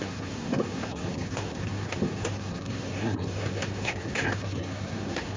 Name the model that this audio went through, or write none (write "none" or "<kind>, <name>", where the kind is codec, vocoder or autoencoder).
codec, SNAC